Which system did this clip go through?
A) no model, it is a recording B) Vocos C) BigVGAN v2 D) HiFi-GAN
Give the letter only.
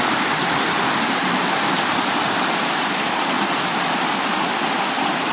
C